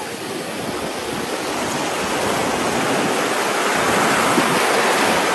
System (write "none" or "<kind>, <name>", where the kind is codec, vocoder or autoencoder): none